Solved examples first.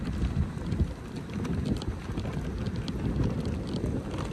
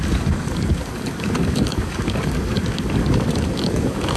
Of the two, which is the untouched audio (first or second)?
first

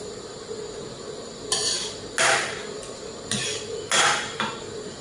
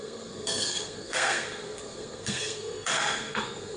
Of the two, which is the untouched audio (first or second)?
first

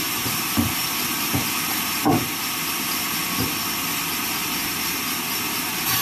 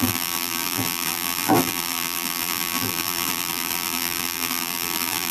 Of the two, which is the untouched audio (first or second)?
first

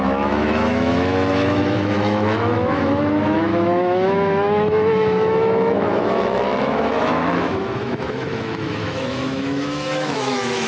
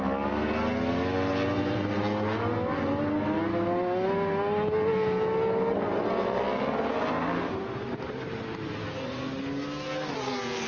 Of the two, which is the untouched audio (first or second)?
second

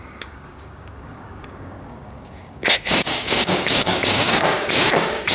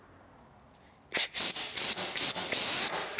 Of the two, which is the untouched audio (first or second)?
second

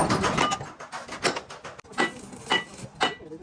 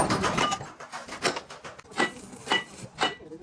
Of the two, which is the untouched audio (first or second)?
first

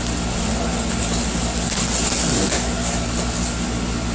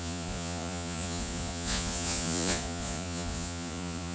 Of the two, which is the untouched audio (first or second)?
first